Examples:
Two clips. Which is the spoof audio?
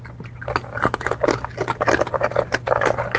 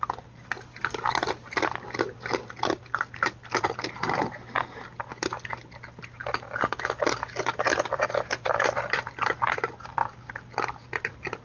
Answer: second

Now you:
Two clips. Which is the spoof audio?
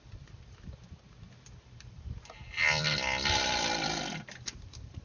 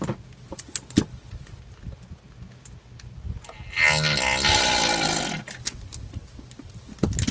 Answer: first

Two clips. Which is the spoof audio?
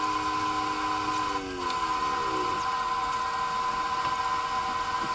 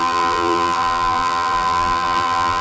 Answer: second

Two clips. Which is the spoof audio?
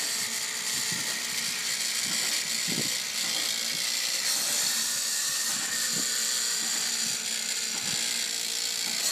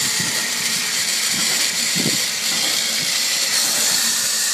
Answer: second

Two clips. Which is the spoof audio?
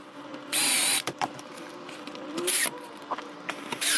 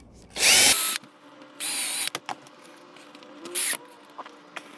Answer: first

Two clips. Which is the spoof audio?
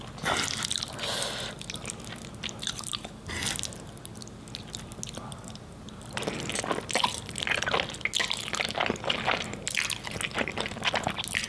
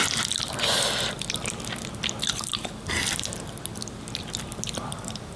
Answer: second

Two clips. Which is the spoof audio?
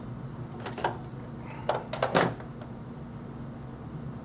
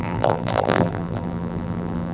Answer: second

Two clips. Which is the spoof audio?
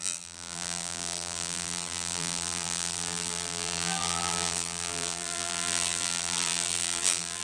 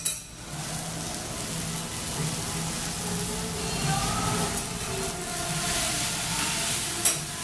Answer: first